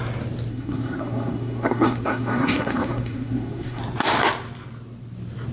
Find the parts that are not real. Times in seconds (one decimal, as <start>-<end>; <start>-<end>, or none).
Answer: 0.5-3.8